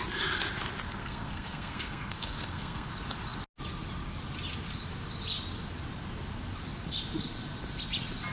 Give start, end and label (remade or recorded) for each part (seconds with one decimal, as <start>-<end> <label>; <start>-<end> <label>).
0.0-1.0 recorded; 1.0-2.9 remade; 2.9-8.3 recorded